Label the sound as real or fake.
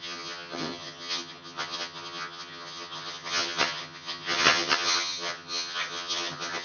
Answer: fake